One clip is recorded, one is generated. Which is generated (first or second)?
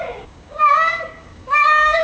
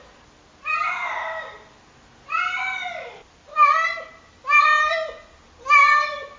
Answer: first